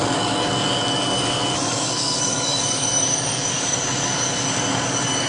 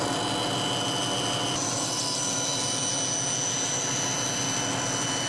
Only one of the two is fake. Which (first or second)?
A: first